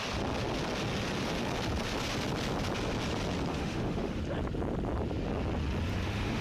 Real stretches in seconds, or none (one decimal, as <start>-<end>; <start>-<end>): 0.0-3.5; 4.2-5.9